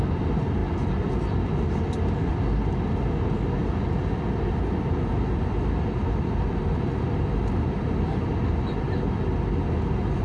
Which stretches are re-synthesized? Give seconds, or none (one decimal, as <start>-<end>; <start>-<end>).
none